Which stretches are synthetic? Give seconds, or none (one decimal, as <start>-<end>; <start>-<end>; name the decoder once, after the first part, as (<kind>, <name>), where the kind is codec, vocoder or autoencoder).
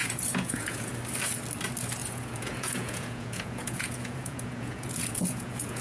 0.0-0.9 (vocoder, Vocos); 2.0-5.8